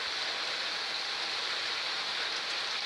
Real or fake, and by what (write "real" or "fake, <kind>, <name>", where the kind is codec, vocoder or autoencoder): real